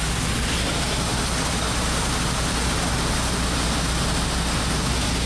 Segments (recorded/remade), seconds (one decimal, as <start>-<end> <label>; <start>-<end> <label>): 0.0-5.3 recorded